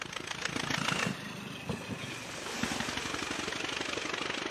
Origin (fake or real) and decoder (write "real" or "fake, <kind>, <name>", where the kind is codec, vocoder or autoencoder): real